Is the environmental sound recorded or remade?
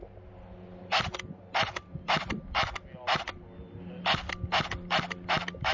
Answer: recorded